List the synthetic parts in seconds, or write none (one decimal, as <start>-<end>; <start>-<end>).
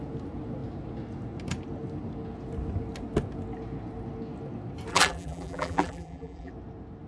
4.9-6.5